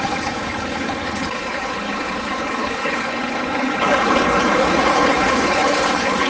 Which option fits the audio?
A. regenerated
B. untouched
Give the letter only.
A